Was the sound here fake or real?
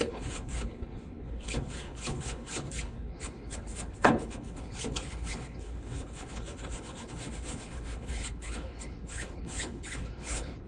fake